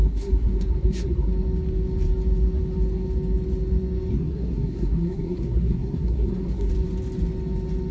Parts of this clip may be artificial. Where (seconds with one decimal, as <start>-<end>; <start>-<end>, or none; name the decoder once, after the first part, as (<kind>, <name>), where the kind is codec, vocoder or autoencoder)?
0.0-1.3 (codec, SNAC); 4.1-6.7